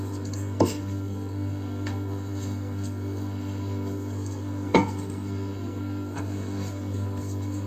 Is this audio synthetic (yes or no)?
yes